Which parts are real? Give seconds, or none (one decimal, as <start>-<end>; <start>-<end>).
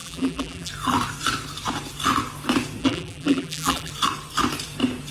0.7-2.8; 3.9-5.1